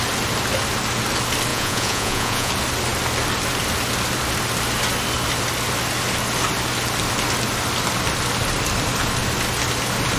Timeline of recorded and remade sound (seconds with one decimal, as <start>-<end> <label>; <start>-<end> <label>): 0.0-1.5 recorded; 1.5-2.5 remade; 2.5-10.2 recorded